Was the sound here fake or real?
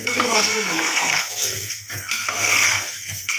fake